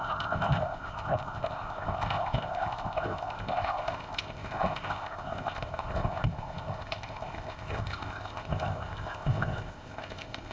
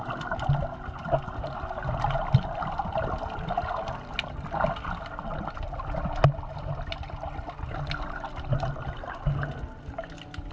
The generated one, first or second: first